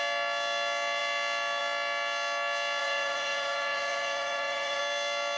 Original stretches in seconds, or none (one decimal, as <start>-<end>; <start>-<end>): 0.0-2.8; 4.8-5.4

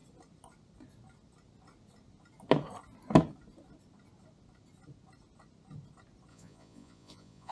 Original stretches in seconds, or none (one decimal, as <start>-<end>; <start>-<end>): 0.0-6.3

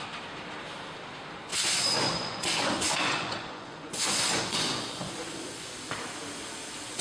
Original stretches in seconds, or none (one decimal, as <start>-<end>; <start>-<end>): 0.0-1.5; 5.7-7.0